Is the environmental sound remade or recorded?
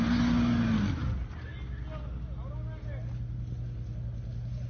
recorded